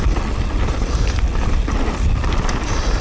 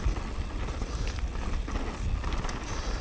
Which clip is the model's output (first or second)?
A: first